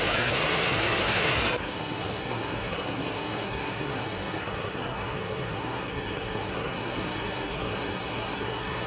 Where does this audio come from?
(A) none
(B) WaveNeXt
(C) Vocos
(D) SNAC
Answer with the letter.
D